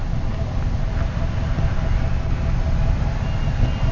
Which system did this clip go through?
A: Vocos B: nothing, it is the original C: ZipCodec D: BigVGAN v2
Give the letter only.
B